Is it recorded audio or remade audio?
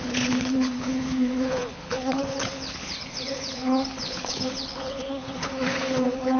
remade